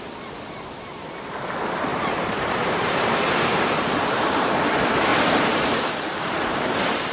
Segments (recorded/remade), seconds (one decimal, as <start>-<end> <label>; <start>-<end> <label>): 0.0-1.9 recorded; 1.9-4.4 remade; 4.4-5.1 recorded; 5.1-7.1 remade